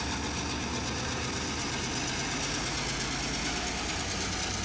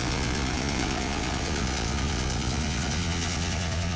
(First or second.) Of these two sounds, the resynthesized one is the second